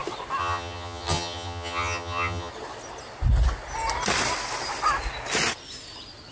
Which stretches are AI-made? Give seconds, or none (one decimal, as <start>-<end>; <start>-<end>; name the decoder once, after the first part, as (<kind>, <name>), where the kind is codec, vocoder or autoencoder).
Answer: 0.4-2.5 (vocoder, HiFi-GAN)